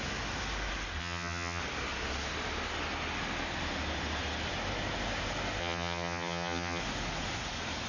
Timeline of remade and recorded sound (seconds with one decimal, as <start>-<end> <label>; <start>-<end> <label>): 0.0-1.0 recorded; 1.0-1.6 remade; 1.6-5.6 recorded; 5.6-6.8 remade; 6.8-7.9 recorded

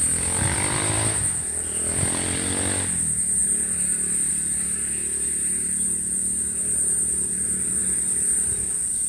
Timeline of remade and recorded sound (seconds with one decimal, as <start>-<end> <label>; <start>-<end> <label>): 0.0-9.1 recorded

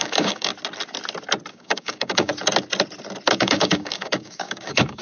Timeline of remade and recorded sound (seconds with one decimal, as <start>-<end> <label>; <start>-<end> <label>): 0.0-0.5 remade; 0.5-1.5 recorded; 1.5-2.3 remade; 2.3-3.3 recorded; 3.3-5.0 remade

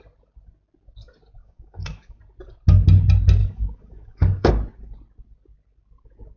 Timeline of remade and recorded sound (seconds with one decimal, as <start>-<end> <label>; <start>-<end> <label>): 0.0-1.4 recorded; 1.4-2.2 remade; 2.2-3.4 recorded; 3.4-4.5 remade; 4.5-6.4 recorded